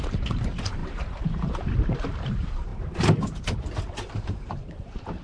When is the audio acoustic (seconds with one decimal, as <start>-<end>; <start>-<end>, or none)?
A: 2.7-3.8